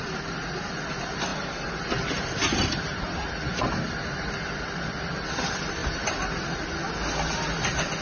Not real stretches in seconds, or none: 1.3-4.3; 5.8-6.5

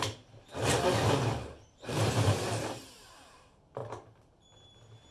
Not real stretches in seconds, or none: 0.0-0.5; 1.4-3.8

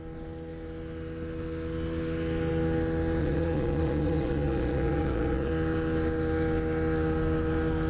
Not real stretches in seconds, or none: 3.2-5.5

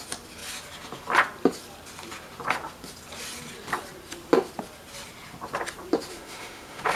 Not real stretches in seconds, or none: 6.1-7.0